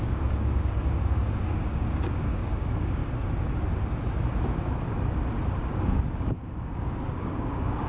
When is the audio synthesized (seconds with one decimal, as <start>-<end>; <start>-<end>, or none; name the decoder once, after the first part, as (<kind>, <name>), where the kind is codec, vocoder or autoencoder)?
0.0-3.0 (codec, DAC); 5.6-7.9